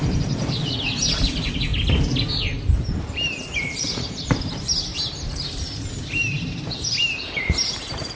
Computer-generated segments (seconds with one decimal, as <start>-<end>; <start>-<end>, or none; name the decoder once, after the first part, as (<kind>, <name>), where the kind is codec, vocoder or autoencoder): 0.0-1.7 (vocoder, BigVGAN v2); 3.0-8.2